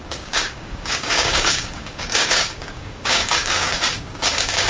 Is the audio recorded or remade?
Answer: remade